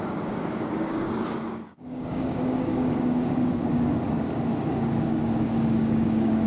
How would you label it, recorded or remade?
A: remade